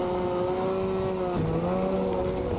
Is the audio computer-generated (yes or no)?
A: no